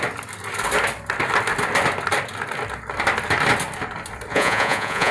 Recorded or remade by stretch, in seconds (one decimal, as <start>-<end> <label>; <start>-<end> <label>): 0.0-4.3 recorded; 4.3-5.1 remade